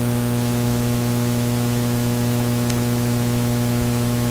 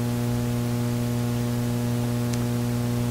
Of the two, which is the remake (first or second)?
first